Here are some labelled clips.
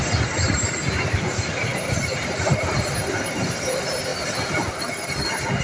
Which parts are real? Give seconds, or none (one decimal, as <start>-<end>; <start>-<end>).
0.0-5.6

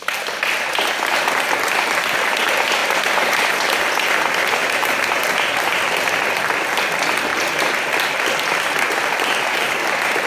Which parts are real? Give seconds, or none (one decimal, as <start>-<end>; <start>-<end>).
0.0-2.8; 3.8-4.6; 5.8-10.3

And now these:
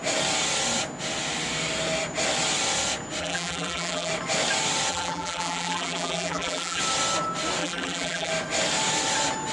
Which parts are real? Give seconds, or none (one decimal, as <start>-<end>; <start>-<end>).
0.0-3.2; 4.1-4.9; 6.8-7.6; 8.3-9.5

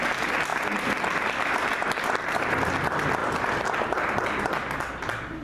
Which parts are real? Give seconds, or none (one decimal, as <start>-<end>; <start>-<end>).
0.0-0.5; 2.7-5.4

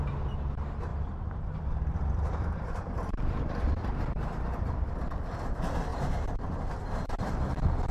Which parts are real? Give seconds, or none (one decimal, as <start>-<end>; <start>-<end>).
0.0-0.9; 4.2-5.9; 7.3-7.9

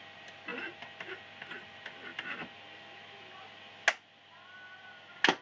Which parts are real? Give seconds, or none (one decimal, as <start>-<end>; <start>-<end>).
0.0-5.4

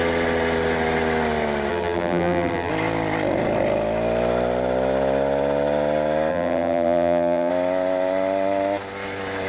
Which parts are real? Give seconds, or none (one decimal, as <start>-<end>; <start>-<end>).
0.0-1.7; 2.7-6.3; 7.5-9.5

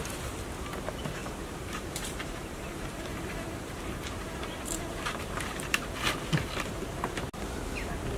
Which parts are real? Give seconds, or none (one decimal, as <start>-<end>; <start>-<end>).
0.0-1.2; 5.9-8.2